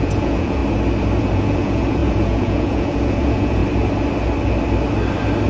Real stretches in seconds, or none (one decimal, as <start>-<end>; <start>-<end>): 0.6-1.2; 3.6-5.5